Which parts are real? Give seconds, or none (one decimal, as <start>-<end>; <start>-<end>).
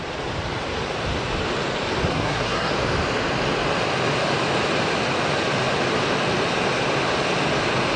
0.0-2.1; 2.7-8.0